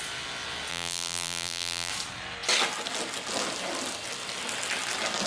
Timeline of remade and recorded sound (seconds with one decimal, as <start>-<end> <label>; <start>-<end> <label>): 0.0-0.7 recorded; 0.7-1.9 remade; 1.9-5.3 recorded